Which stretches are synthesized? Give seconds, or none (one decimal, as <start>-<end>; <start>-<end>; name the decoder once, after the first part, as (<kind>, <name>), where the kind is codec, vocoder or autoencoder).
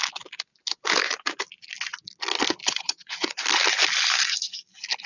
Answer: 2.6-3.4 (vocoder, WaveNeXt)